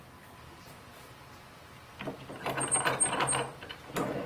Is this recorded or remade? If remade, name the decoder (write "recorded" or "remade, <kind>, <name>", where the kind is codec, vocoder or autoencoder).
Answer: recorded